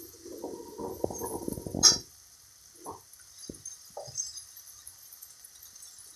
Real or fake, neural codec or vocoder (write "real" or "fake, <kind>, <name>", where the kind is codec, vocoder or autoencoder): real